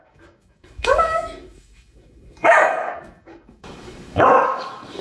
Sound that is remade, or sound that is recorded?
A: remade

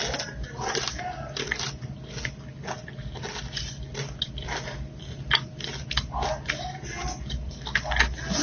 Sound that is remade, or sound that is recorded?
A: recorded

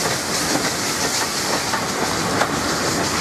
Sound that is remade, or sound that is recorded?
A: recorded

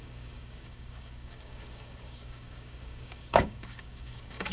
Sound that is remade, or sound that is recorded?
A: remade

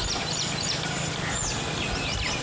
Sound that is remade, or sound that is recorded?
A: recorded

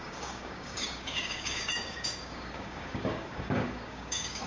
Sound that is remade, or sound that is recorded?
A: remade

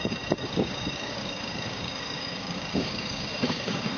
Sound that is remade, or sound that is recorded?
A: remade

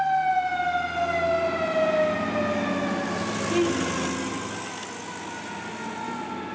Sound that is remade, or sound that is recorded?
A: recorded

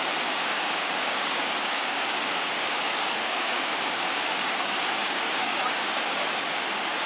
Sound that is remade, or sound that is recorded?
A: remade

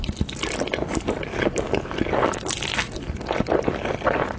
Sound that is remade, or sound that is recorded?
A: recorded